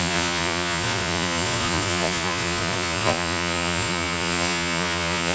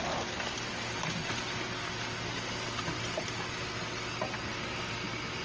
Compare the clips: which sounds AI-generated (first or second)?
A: first